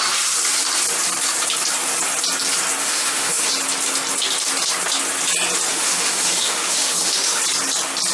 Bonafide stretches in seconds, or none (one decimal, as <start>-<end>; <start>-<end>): 0.0-2.8; 3.5-5.7; 7.4-8.1